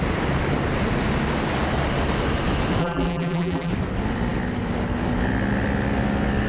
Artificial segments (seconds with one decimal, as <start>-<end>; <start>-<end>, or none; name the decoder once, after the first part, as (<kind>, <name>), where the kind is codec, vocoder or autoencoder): 2.8-3.7 (vocoder, BigVGAN v2)